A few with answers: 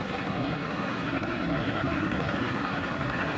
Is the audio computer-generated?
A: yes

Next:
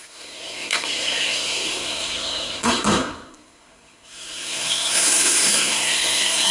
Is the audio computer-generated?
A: yes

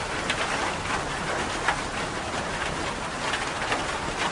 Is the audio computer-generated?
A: no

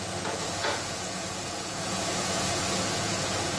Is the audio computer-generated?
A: yes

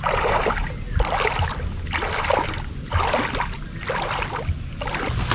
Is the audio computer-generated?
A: no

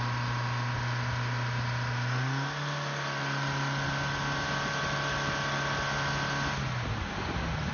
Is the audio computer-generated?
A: no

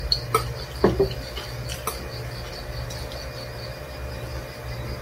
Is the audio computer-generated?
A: no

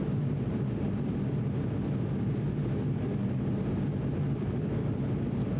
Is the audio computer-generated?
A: no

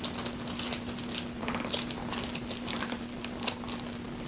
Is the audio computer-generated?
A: no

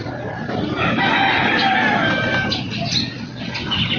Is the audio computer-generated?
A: no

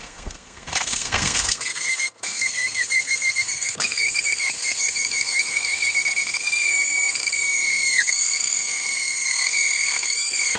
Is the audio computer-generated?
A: yes